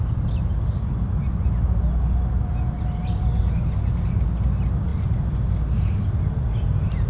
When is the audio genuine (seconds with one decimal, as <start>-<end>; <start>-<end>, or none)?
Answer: 0.0-7.1